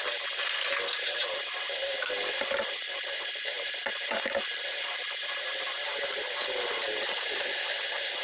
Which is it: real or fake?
fake